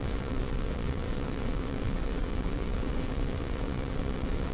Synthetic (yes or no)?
yes